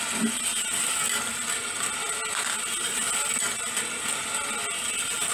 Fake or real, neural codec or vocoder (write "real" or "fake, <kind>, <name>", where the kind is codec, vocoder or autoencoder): real